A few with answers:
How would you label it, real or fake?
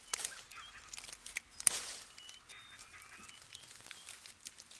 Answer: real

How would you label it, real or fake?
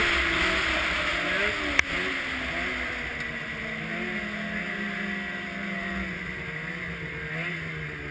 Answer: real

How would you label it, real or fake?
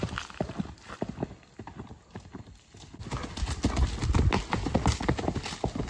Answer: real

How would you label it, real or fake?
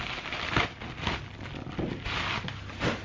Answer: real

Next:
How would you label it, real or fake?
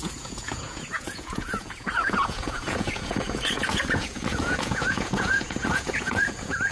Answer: fake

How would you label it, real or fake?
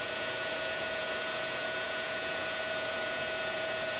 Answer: fake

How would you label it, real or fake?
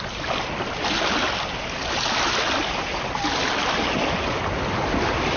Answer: real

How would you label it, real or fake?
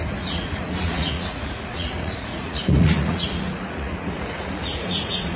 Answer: fake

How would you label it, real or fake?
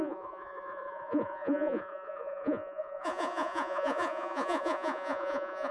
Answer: fake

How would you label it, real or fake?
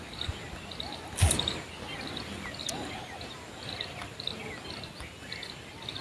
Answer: real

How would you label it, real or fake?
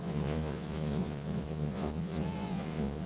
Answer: fake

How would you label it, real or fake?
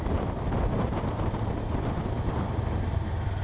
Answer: real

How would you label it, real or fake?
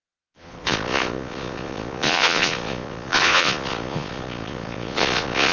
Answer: fake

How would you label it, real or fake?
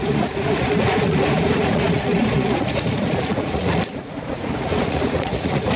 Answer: fake